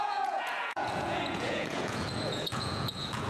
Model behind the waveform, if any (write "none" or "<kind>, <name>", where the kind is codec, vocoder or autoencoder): vocoder, Vocos